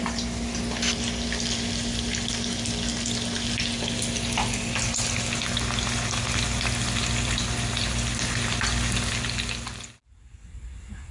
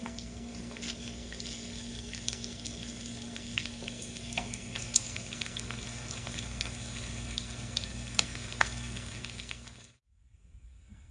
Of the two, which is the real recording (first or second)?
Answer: first